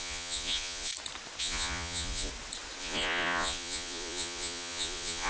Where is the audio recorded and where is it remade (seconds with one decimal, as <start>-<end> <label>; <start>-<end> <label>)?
0.0-0.9 remade; 0.9-1.4 recorded; 1.4-2.3 remade; 2.3-2.8 recorded; 2.8-5.3 remade